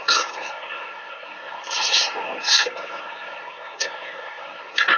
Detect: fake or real fake